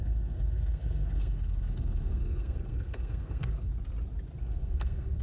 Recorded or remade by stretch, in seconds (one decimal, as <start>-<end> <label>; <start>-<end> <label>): 0.0-3.7 remade; 3.7-4.4 recorded; 4.4-5.2 remade